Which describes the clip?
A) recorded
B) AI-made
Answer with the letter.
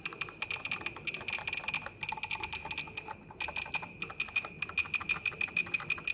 A